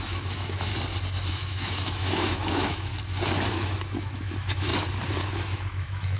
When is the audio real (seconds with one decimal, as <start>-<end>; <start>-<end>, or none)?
0.7-1.3; 2.9-3.5; 4.7-5.3